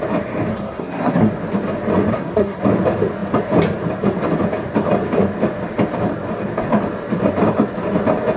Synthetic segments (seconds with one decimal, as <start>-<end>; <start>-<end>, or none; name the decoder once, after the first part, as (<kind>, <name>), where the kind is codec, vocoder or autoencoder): 0.5-1.3 (codec, SNAC); 2.1-2.6